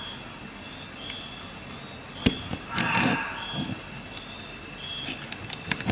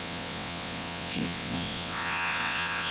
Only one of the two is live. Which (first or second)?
first